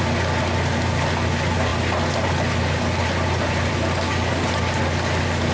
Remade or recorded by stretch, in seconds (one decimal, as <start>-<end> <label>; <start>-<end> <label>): 0.0-5.5 recorded